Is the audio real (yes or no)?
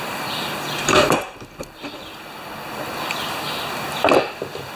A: no